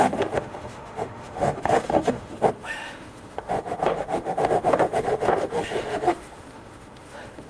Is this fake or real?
fake